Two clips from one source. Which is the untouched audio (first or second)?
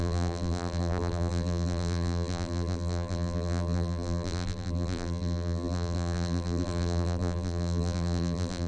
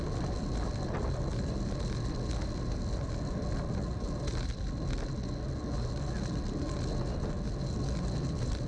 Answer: second